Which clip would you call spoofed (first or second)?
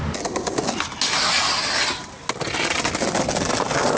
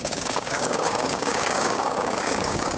second